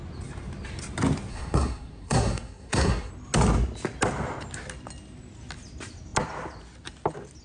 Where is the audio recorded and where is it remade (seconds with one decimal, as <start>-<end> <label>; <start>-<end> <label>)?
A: 0.0-1.3 recorded; 1.3-3.1 remade; 3.1-7.4 recorded